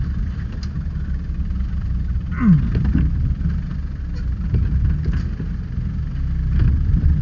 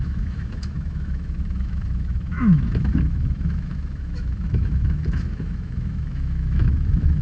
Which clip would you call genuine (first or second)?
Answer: first